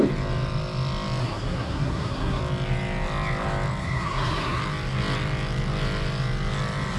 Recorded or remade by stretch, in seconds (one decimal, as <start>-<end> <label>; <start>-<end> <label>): 0.0-1.2 recorded; 1.2-2.4 remade; 2.4-3.8 recorded; 3.8-4.6 remade; 4.6-7.0 recorded